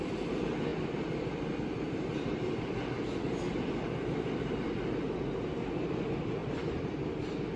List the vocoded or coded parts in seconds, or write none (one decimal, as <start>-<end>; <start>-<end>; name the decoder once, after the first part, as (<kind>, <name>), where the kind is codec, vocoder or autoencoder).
0.7-5.0 (vocoder, BigVGAN v2); 6.4-6.9